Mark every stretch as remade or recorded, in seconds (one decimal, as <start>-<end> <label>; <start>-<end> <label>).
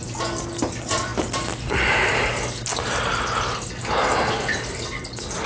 0.0-5.5 recorded